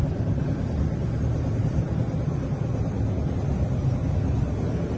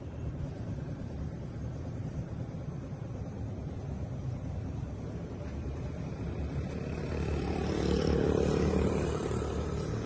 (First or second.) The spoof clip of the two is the second